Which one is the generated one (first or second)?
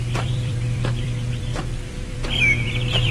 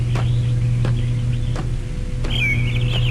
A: first